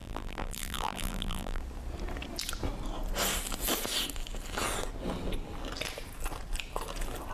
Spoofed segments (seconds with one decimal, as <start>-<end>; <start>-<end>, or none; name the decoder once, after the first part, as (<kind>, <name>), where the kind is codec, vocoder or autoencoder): 0.0-1.6 (vocoder, BigVGAN v2)